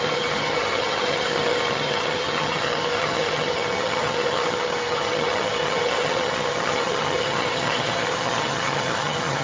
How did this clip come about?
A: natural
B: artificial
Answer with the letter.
B